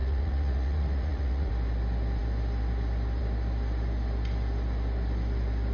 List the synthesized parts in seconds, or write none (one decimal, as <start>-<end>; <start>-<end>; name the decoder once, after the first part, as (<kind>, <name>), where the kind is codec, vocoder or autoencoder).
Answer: 0.0-1.5 (vocoder, Vocos)